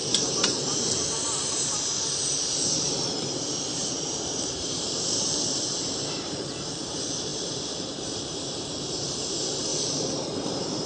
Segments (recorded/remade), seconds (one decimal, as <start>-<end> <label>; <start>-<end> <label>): 0.0-0.6 recorded; 0.6-10.9 remade